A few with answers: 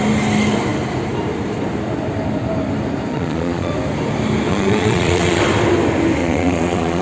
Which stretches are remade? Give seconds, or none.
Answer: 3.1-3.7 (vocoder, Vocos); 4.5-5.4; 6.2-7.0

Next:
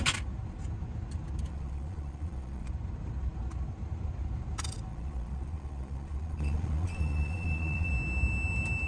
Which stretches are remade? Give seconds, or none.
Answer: 1.5-2.7 (vocoder, Vocos); 4.9-7.9